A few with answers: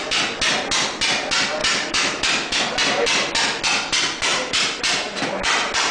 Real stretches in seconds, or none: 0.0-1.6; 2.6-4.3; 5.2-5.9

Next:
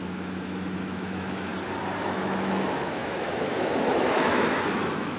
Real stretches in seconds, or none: 1.5-2.0

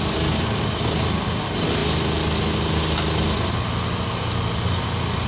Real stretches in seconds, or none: 0.0-5.3

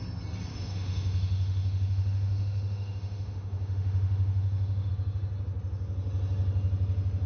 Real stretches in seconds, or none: 0.0-0.5; 4.9-7.3

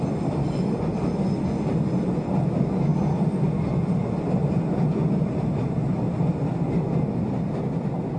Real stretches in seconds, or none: 0.0-8.2

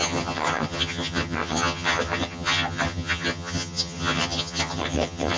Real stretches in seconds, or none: none

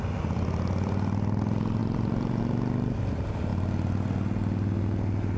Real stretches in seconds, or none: 0.0-1.8; 2.4-5.4